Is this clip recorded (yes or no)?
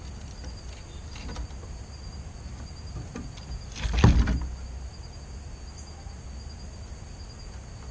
yes